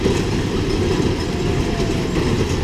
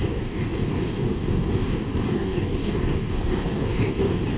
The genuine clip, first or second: first